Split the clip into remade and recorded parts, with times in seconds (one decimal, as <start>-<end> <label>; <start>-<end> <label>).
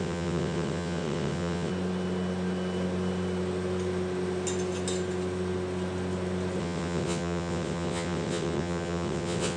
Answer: 0.0-1.7 remade; 1.7-6.6 recorded; 6.6-9.6 remade